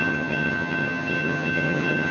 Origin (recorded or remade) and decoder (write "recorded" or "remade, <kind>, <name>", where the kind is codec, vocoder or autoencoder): remade, vocoder, HiFi-GAN